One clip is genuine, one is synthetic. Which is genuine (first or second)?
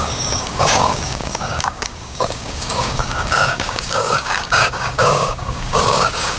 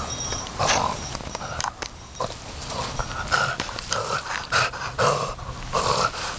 second